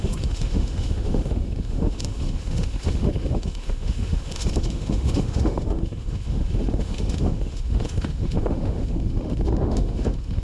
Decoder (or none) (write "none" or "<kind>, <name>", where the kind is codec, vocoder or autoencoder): autoencoder, DAC-VAE